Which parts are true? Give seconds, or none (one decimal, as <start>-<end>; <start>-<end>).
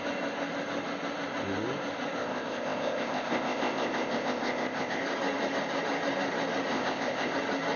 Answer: 0.0-2.2; 5.0-6.7; 7.3-7.8